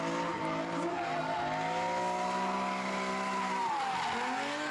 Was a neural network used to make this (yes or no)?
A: no